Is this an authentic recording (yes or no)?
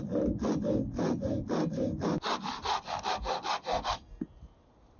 yes